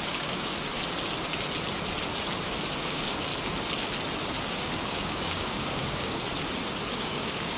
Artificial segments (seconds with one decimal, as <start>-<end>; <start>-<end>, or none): 0.0-0.5; 2.8-3.3; 4.5-6.2; 6.9-7.6